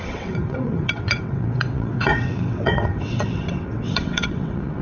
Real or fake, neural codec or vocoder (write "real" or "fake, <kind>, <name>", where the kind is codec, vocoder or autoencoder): fake, vocoder, WaveNeXt